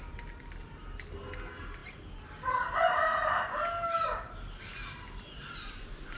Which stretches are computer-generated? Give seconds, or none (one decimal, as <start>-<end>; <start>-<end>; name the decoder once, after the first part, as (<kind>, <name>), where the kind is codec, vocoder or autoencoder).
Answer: none